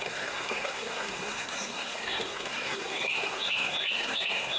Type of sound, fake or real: fake